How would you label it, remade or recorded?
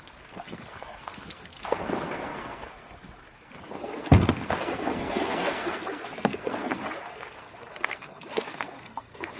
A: remade